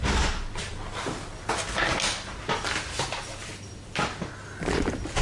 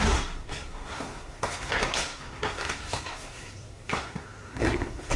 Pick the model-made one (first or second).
second